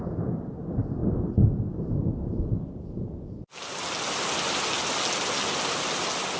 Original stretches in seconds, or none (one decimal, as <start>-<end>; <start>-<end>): 0.0-6.4